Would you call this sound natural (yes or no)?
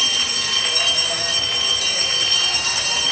yes